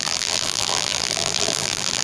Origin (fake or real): fake